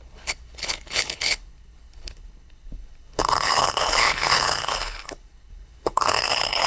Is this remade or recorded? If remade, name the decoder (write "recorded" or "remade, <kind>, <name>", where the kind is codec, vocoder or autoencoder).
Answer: remade, codec, HILCodec